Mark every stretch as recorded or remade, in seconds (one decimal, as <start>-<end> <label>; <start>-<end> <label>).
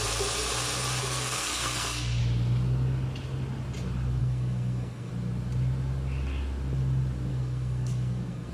0.0-1.0 recorded; 1.0-2.2 remade; 2.2-4.2 recorded; 4.2-5.1 remade; 5.1-7.3 recorded; 7.3-8.5 remade